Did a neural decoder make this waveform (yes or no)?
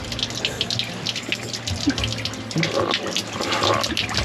no